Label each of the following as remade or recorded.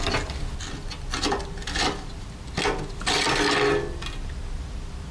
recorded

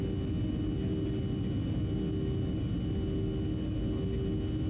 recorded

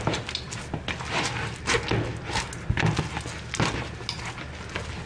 recorded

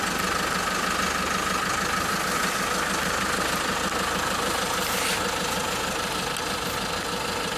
recorded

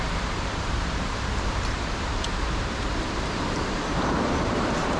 remade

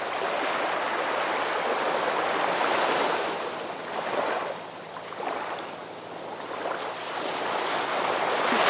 recorded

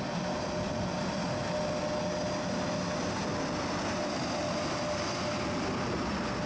recorded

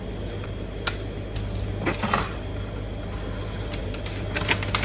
recorded